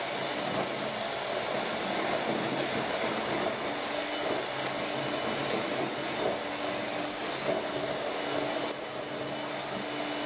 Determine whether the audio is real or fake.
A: real